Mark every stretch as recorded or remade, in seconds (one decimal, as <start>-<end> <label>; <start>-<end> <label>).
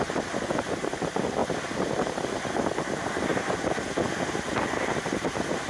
0.0-5.7 recorded